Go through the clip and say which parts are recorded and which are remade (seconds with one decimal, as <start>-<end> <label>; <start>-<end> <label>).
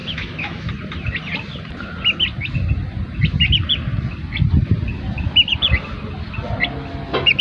0.0-0.7 remade; 0.7-7.4 recorded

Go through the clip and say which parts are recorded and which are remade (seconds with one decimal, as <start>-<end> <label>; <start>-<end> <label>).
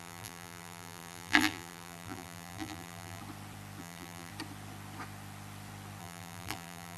0.0-3.2 remade; 3.2-3.8 recorded; 3.8-4.3 remade; 4.3-6.0 recorded; 6.0-7.0 remade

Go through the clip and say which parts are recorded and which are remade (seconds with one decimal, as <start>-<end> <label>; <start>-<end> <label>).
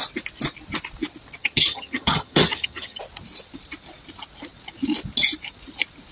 0.0-1.4 recorded; 1.4-3.0 remade; 3.0-6.1 recorded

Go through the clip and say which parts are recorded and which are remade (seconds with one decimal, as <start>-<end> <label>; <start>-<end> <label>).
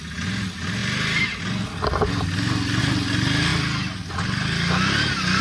0.0-5.4 recorded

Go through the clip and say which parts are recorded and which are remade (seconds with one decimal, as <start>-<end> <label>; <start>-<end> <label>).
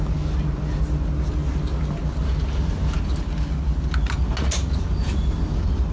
0.0-5.9 recorded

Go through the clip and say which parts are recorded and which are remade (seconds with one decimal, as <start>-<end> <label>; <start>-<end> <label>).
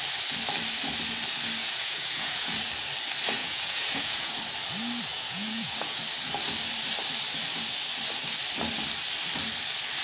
0.0-1.6 recorded; 1.6-2.6 remade; 2.6-3.4 recorded; 3.4-4.4 remade; 4.4-5.1 recorded; 5.1-6.0 remade; 6.0-10.0 recorded